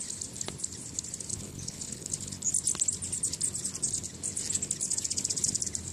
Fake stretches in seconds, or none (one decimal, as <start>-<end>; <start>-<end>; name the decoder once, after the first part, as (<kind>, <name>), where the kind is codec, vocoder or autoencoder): 1.3-2.5 (codec, HILCodec)